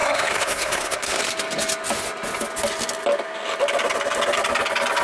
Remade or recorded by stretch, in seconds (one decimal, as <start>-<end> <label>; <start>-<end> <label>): 0.0-1.2 remade; 1.2-5.0 recorded

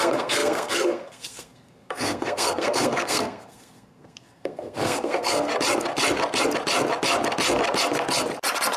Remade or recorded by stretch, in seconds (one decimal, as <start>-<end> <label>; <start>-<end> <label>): 0.0-5.5 remade; 5.5-8.8 recorded

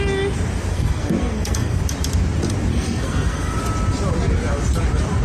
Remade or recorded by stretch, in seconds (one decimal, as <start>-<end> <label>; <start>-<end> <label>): 0.0-0.7 recorded; 0.7-1.8 remade; 1.8-2.7 recorded; 2.7-3.6 remade; 3.6-5.2 recorded

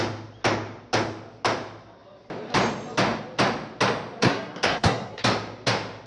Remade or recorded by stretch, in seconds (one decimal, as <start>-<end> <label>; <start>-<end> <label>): 0.0-4.2 recorded; 4.2-5.2 remade; 5.2-6.1 recorded